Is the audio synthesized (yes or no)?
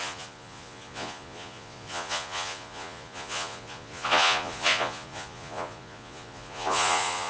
yes